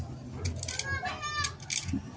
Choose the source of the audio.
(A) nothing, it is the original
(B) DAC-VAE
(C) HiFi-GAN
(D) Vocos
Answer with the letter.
A